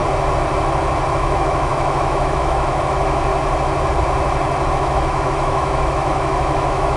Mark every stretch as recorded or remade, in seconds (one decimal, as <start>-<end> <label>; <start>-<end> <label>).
0.0-1.2 recorded; 1.2-3.3 remade; 3.3-4.7 recorded; 4.7-7.0 remade